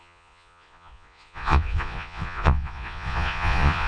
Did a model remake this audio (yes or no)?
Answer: yes